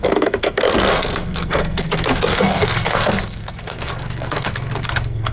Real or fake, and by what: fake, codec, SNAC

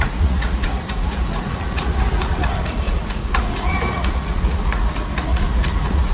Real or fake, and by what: fake, vocoder, Vocos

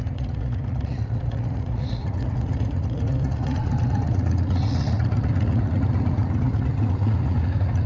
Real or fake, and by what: fake, vocoder, Vocos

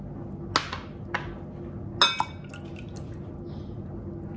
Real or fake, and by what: real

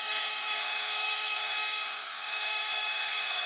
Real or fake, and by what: fake, codec, SNAC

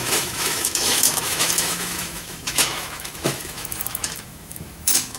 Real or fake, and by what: fake, autoencoder, DAC-VAE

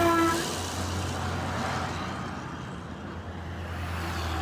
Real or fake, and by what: real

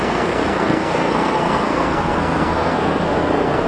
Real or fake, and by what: fake, codec, SNAC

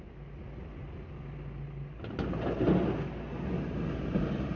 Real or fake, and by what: real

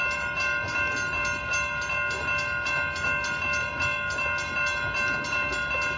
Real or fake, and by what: real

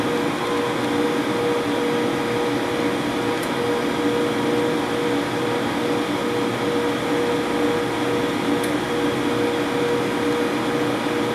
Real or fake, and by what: real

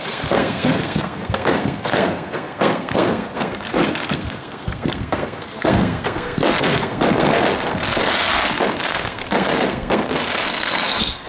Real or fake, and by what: fake, codec, SNAC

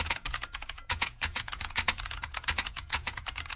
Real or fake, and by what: fake, vocoder, Vocos